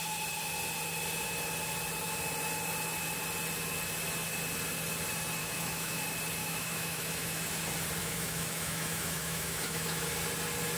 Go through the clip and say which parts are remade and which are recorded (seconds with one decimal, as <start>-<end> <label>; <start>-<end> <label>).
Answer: 0.0-5.4 recorded; 5.4-6.0 remade; 6.0-6.4 recorded; 6.4-7.4 remade; 7.4-8.0 recorded; 8.0-10.1 remade; 10.1-10.8 recorded